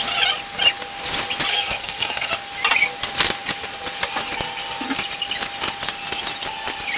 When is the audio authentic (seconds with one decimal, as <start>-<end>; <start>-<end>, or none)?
0.0-1.5; 2.3-7.0